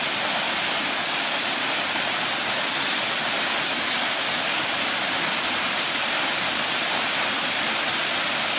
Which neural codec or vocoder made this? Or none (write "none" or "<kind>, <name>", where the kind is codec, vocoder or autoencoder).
none